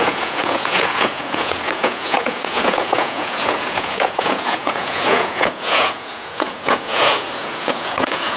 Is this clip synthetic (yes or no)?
yes